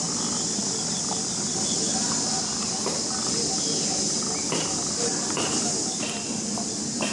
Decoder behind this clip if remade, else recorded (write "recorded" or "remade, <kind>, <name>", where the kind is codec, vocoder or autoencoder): recorded